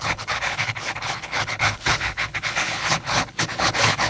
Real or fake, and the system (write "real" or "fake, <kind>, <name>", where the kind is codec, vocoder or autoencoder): fake, codec, HILCodec